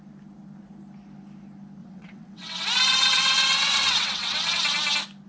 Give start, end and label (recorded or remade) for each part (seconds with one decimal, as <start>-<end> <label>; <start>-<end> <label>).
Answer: 0.0-1.8 recorded; 1.8-2.6 remade; 2.6-3.0 recorded; 3.0-4.8 remade; 4.8-5.3 recorded